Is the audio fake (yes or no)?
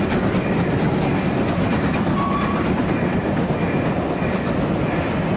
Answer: no